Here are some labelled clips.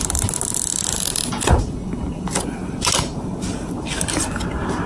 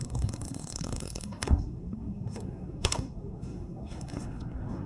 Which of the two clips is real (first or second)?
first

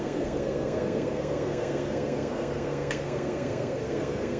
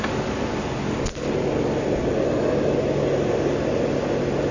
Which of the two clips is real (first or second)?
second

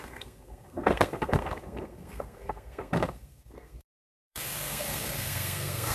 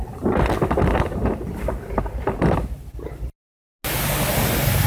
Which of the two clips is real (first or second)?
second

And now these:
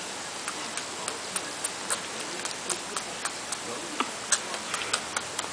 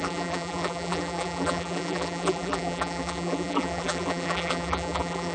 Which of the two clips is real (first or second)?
first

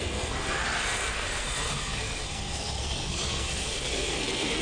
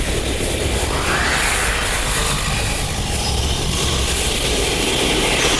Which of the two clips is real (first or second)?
second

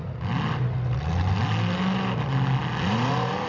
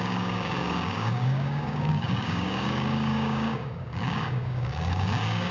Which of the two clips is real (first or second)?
first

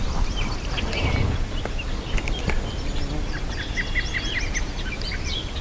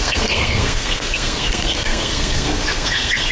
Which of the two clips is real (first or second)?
first